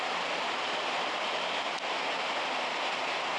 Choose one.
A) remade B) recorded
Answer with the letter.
B